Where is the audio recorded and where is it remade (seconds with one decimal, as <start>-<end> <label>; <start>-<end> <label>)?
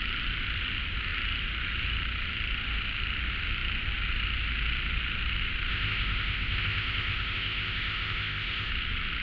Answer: 0.0-5.7 recorded; 5.7-8.7 remade; 8.7-9.2 recorded